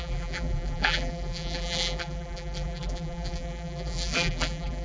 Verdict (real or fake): fake